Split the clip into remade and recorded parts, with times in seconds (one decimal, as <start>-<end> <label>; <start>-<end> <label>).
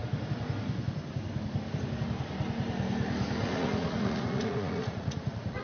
0.0-3.4 recorded; 3.4-5.6 remade